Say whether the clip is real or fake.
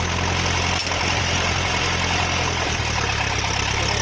real